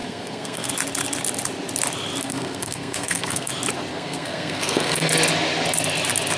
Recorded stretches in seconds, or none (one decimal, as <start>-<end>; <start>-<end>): 0.7-2.2; 3.5-3.9; 5.1-6.4